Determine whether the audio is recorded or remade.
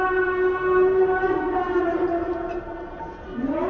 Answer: recorded